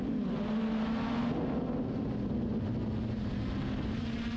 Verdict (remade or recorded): recorded